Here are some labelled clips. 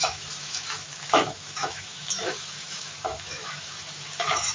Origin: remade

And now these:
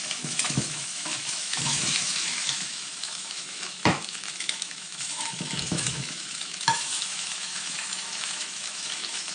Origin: remade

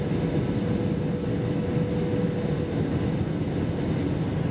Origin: recorded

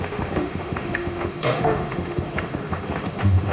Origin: remade